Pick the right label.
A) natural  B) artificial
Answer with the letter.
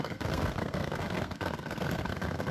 B